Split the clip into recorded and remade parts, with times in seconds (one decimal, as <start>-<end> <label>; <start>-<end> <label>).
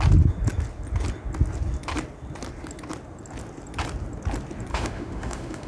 0.0-4.7 recorded; 4.7-5.7 remade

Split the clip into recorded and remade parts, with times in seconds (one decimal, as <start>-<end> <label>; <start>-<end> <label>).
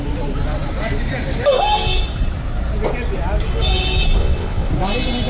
0.0-4.2 recorded; 4.2-4.7 remade; 4.7-5.3 recorded